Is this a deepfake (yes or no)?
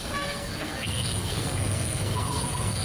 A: yes